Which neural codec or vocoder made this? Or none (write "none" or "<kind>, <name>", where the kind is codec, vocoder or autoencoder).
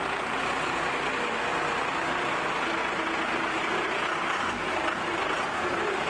none